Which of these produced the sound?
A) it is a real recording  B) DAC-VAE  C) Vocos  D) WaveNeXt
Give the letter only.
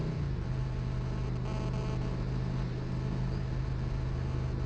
A